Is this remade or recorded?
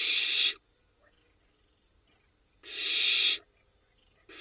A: recorded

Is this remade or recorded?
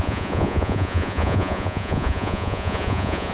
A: remade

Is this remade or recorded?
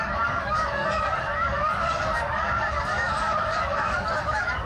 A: remade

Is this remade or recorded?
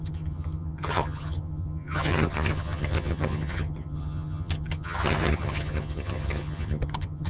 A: remade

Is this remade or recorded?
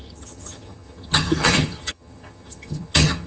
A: remade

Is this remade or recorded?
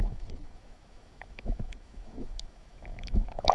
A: remade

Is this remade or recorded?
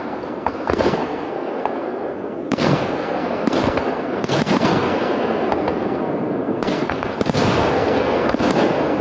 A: remade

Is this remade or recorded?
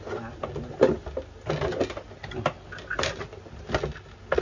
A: recorded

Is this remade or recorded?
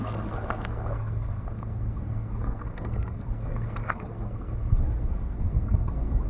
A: remade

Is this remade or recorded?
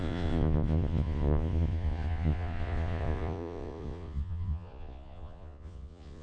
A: remade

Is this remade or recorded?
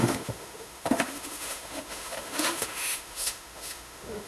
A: remade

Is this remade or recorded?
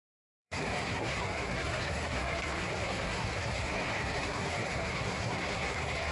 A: remade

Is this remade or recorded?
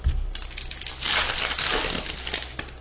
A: recorded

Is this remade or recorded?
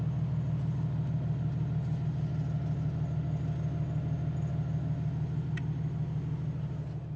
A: recorded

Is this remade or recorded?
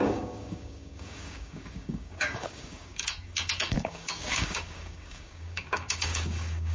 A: remade